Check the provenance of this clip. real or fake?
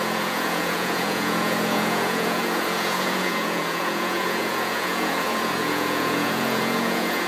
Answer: fake